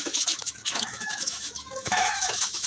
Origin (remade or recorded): remade